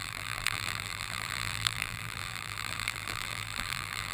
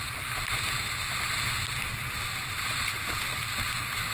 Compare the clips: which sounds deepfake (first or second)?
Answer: first